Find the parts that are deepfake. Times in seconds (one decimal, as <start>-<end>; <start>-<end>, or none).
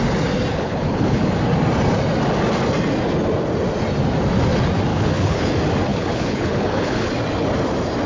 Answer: 0.5-1.3; 4.9-5.5; 5.9-7.1